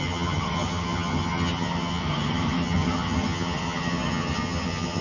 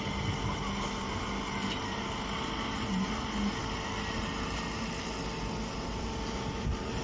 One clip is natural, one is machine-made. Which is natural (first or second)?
second